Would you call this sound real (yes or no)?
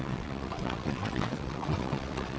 no